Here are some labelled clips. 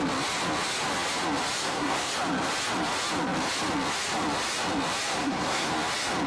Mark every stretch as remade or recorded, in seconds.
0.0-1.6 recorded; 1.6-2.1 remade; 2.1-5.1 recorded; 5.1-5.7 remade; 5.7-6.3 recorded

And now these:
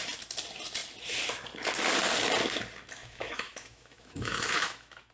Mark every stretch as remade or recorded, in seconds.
0.0-3.0 recorded; 3.0-5.1 remade

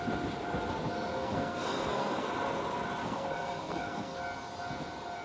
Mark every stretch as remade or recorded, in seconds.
0.0-1.2 recorded; 1.2-2.3 remade; 2.3-3.0 recorded; 3.0-4.2 remade; 4.2-5.2 recorded

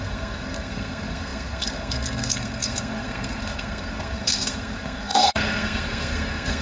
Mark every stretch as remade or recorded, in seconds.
0.0-6.6 remade

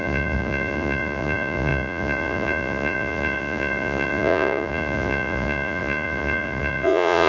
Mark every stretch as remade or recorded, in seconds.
0.0-7.3 remade

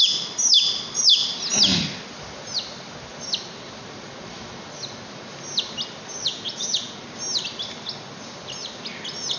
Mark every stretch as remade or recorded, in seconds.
0.0-6.3 recorded; 6.3-7.0 remade; 7.0-9.4 recorded

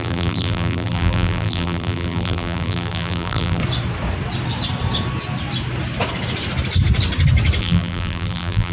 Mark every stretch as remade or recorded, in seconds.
0.0-3.6 remade; 3.6-7.6 recorded; 7.6-8.7 remade

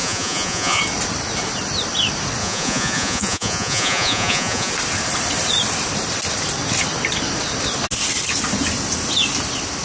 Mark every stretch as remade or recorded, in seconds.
0.0-0.8 remade; 0.8-2.4 recorded; 2.4-4.7 remade; 4.7-9.8 recorded